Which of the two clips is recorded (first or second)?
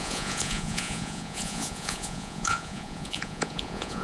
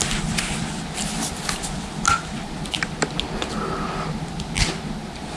second